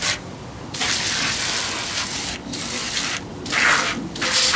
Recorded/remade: recorded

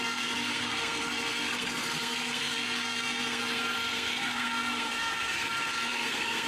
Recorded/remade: remade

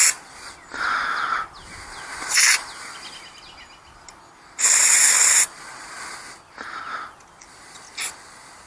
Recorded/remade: recorded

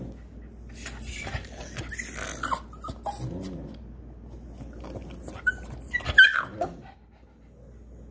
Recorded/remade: recorded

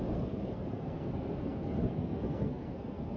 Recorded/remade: remade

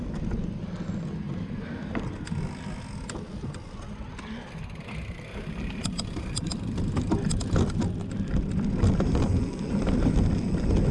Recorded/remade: recorded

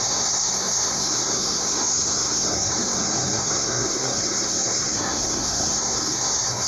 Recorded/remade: remade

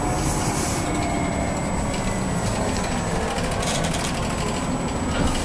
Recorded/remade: recorded